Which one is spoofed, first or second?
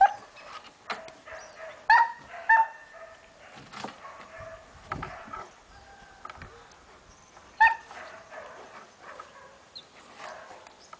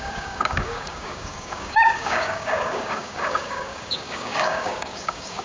second